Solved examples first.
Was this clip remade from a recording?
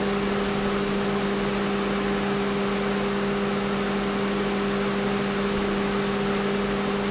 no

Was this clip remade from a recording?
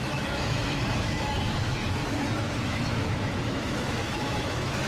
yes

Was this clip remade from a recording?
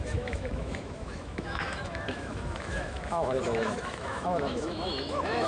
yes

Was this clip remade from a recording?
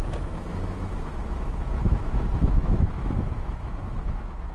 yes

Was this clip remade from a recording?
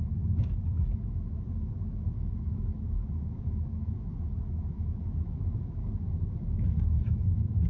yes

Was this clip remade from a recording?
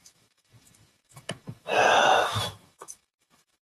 yes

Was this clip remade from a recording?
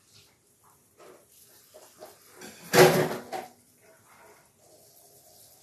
no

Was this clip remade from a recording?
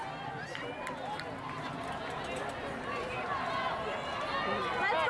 no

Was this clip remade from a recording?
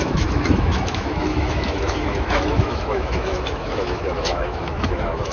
yes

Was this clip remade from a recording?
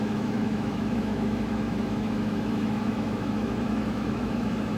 yes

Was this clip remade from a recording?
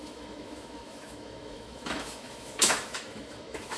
yes